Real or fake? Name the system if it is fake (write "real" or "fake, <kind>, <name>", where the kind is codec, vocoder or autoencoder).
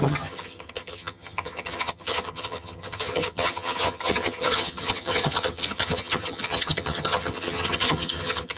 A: fake, vocoder, HiFi-GAN